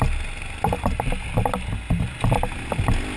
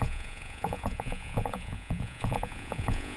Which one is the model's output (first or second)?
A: second